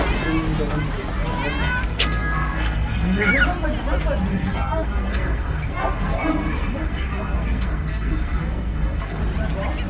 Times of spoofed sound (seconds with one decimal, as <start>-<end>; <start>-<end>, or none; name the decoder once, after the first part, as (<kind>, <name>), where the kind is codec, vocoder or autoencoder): 1.9-3.3 (codec, SNAC); 4.3-9.2